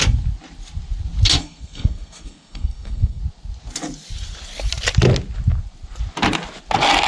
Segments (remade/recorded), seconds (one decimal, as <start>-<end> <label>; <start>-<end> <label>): 0.0-1.4 recorded; 1.4-3.2 remade; 3.2-7.1 recorded